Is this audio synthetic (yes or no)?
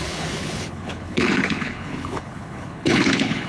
yes